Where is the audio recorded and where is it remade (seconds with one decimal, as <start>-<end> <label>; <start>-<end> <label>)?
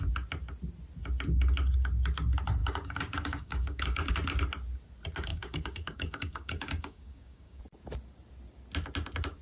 0.0-2.6 recorded; 2.6-4.1 remade; 4.1-5.3 recorded; 5.3-7.6 remade; 7.6-9.4 recorded